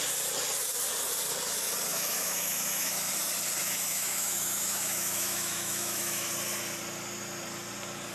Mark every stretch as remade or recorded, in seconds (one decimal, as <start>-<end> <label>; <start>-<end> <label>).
0.0-1.9 recorded; 1.9-3.1 remade; 3.1-3.6 recorded; 3.6-6.3 remade; 6.3-8.1 recorded